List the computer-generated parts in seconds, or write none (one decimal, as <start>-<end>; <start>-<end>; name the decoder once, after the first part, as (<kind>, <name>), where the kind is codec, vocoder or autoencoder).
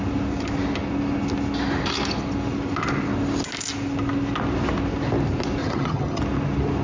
5.6-6.2 (vocoder, HiFi-GAN)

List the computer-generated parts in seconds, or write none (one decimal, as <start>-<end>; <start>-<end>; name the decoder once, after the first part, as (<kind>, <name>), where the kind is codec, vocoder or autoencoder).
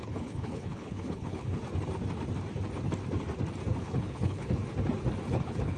0.0-1.6 (codec, HILCodec); 3.8-4.6; 5.3-5.8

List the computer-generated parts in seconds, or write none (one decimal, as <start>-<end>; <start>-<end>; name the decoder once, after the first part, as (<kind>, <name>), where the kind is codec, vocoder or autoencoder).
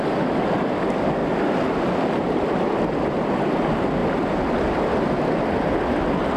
none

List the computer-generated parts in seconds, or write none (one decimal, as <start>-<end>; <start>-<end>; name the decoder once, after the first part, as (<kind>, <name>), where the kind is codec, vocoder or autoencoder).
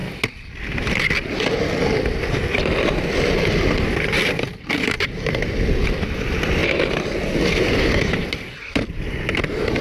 0.5-6.6 (vocoder, BigVGAN v2); 7.6-9.8